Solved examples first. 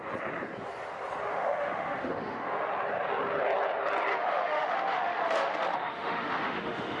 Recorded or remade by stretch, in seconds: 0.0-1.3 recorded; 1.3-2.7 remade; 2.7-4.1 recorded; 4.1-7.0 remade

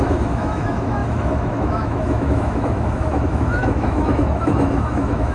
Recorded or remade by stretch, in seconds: 0.0-5.3 remade

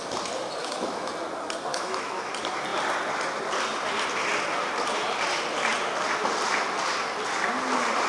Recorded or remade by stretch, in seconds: 0.0-0.6 recorded; 0.6-1.1 remade; 1.1-1.7 recorded; 1.7-2.2 remade; 2.2-8.1 recorded